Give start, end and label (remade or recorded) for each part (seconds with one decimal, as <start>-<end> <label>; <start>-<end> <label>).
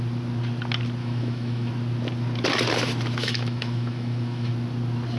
0.0-1.0 recorded; 1.0-1.7 remade; 1.7-3.2 recorded; 3.2-4.5 remade; 4.5-5.2 recorded